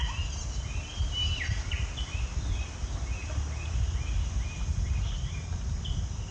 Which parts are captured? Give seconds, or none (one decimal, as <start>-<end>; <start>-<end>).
0.0-6.3